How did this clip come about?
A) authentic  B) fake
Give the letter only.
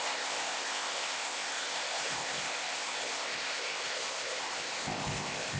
B